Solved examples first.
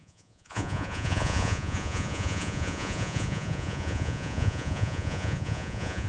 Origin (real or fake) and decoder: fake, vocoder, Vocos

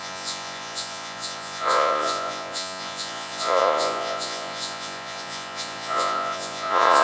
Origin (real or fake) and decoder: fake, vocoder, Vocos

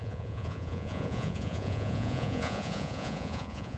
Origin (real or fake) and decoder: fake, vocoder, Vocos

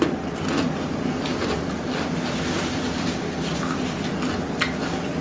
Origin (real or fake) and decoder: real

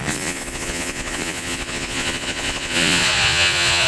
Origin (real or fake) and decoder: fake, vocoder, Vocos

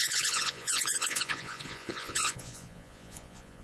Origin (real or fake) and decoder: fake, vocoder, Vocos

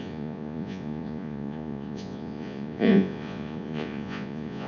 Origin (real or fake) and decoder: fake, vocoder, Vocos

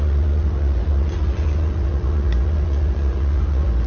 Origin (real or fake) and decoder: fake, vocoder, Vocos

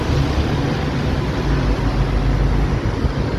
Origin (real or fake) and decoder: real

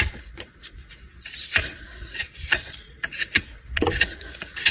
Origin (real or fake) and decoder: fake, vocoder, Vocos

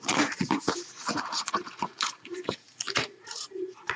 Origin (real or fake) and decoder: fake, vocoder, Vocos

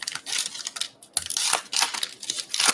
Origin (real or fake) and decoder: real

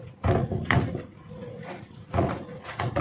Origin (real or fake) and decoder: fake, vocoder, Vocos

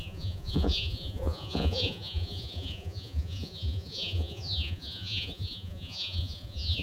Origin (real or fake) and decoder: fake, vocoder, Vocos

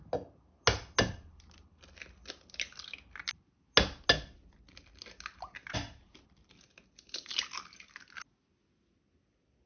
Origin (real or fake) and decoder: real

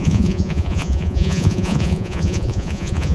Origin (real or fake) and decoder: fake, vocoder, Vocos